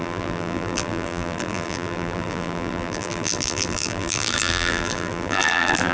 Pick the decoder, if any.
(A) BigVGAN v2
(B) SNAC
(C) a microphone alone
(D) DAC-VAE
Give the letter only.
A